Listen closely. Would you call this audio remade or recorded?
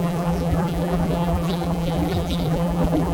remade